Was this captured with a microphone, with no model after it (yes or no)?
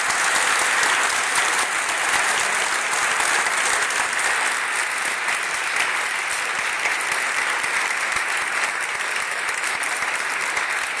yes